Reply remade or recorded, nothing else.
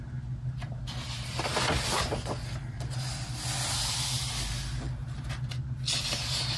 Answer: recorded